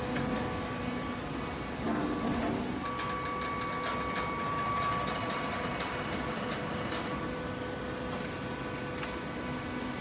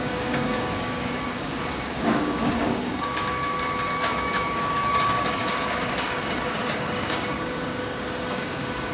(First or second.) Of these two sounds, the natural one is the first